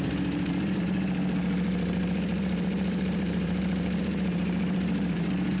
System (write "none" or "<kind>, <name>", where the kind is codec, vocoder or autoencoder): vocoder, BigVGAN v2